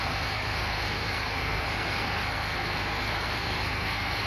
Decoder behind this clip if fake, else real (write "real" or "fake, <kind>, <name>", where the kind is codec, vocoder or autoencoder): fake, codec, SNAC